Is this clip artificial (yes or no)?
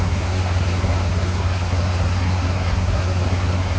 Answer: yes